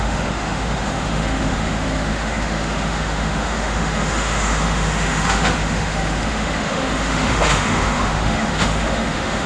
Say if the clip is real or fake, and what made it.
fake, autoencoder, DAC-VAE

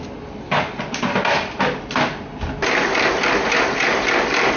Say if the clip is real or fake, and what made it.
real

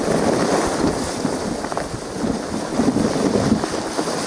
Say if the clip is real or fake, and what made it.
real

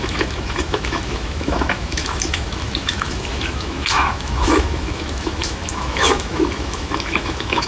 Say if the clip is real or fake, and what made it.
fake, autoencoder, DAC-VAE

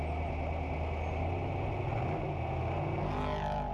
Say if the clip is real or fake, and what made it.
real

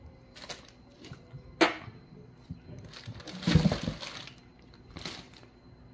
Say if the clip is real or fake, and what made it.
real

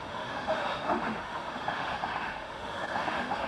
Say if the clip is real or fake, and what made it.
fake, autoencoder, DAC-VAE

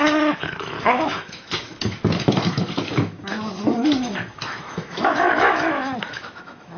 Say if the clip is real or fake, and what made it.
fake, autoencoder, DAC-VAE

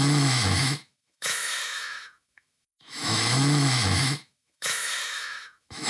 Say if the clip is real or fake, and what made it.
fake, autoencoder, DAC-VAE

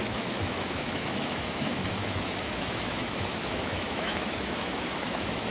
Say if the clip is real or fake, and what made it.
fake, autoencoder, DAC-VAE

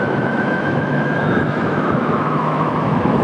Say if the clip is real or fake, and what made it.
fake, autoencoder, DAC-VAE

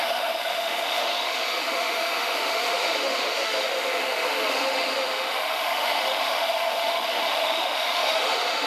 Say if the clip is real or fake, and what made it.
fake, autoencoder, DAC-VAE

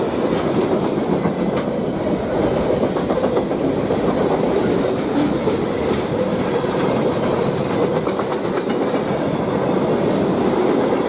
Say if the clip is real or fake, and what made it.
real